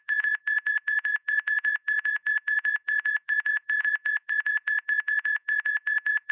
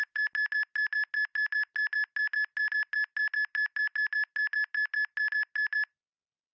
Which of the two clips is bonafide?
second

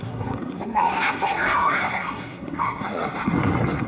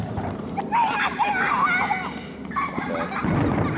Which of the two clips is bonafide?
second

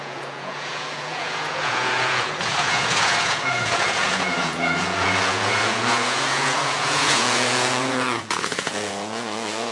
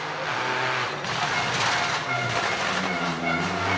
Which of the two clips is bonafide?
second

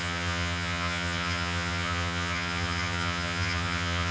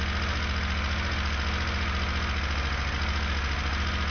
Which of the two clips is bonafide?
second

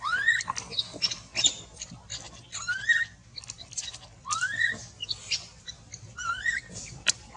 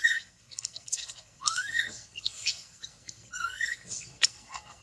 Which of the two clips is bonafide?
first